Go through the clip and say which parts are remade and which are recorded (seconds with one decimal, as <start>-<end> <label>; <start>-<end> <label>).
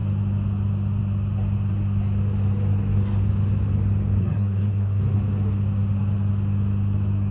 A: 0.0-4.2 recorded; 4.2-5.0 remade; 5.0-7.3 recorded